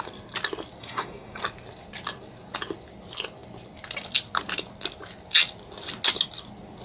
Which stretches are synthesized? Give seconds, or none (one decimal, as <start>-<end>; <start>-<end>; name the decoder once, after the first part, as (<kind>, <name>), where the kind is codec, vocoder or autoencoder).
0.8-1.4 (codec, SNAC)